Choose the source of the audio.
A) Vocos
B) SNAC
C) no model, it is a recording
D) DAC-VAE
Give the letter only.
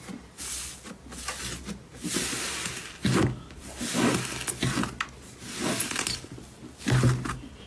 C